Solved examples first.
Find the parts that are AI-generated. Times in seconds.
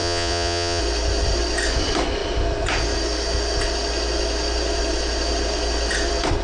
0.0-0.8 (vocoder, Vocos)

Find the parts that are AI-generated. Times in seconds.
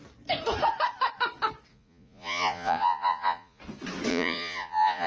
1.7-3.6 (vocoder, Vocos); 4.1-5.1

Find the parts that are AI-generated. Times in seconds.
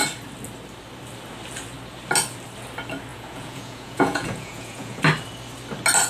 3.1-5.0 (vocoder, Vocos)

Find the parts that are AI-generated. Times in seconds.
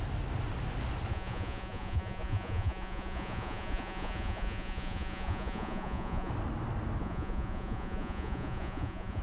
1.1-6.3 (vocoder, Vocos); 7.0-9.2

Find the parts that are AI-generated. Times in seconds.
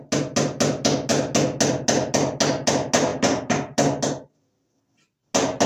none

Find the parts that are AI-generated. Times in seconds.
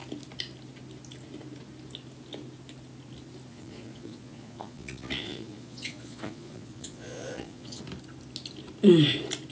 3.5-7.8 (vocoder, Vocos)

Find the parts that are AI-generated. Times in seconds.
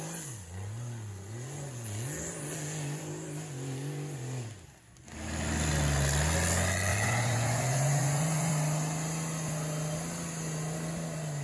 6.9-8.5 (vocoder, Vocos)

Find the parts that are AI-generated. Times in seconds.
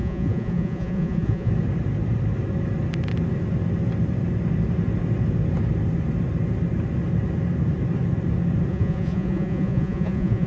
0.0-1.5 (vocoder, Vocos); 8.7-10.5